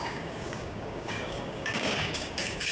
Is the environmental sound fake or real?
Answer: fake